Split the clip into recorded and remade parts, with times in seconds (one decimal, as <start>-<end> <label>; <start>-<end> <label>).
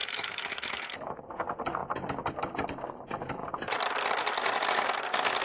0.0-1.2 remade; 1.2-5.4 recorded